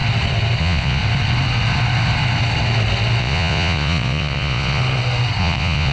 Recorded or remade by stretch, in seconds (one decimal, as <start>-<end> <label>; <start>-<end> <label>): 0.0-0.6 recorded; 0.6-1.0 remade; 1.0-3.2 recorded; 3.2-4.8 remade; 4.8-5.4 recorded; 5.4-5.9 remade